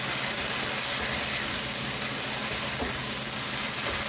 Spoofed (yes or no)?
no